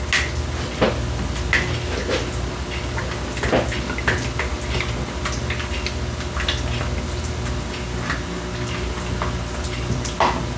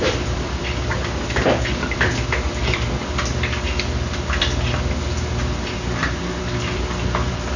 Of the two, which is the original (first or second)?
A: first